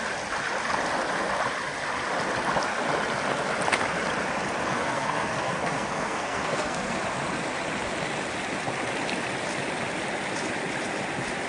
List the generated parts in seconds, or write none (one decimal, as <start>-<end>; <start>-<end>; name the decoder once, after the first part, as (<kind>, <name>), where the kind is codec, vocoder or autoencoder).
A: 4.7-7.0 (codec, SNAC)